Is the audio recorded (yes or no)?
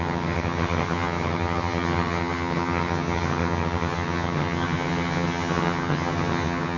no